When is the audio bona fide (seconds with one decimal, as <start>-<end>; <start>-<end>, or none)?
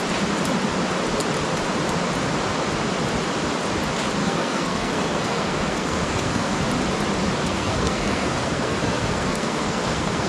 0.0-4.2; 6.6-7.4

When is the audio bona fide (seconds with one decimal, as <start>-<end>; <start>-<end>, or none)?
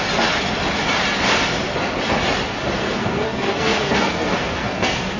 0.0-2.8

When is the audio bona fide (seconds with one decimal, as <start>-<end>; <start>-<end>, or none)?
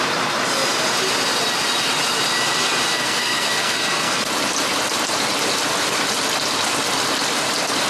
0.0-2.9; 4.3-7.9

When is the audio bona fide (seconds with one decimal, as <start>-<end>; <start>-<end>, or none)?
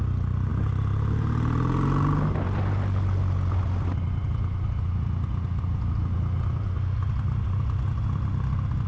0.0-8.9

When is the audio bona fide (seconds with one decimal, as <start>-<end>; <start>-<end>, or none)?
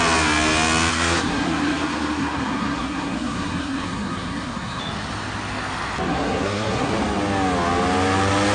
0.0-0.9; 4.8-6.1; 6.9-8.5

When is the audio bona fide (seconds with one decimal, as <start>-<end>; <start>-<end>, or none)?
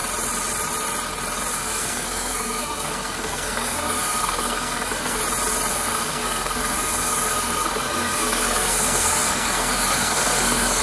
0.0-1.5; 5.2-5.7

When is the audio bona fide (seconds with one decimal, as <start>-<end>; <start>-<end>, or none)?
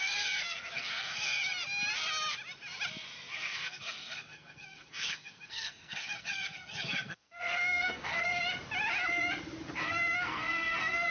1.4-3.3; 8.3-9.8